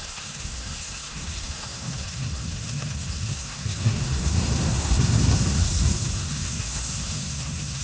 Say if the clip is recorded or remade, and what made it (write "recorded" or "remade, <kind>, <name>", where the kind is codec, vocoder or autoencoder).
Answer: remade, codec, SNAC